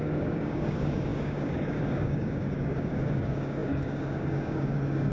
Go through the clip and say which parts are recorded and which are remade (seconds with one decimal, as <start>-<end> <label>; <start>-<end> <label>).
0.0-5.1 remade